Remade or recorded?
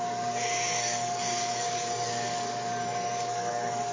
remade